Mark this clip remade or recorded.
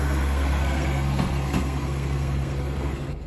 remade